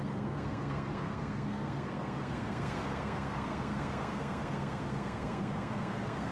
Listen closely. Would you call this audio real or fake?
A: fake